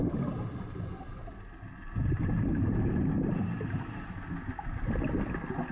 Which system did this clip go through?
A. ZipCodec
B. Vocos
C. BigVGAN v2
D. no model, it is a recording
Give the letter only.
D